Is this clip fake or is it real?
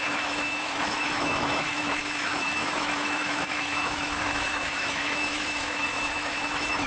fake